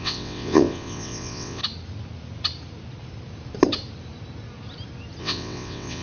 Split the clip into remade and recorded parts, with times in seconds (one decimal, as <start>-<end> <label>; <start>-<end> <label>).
0.0-1.6 remade; 1.6-5.2 recorded; 5.2-6.0 remade